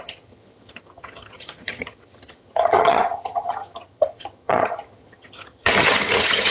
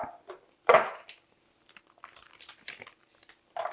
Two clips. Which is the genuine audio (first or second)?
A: second